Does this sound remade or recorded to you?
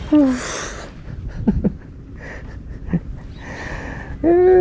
recorded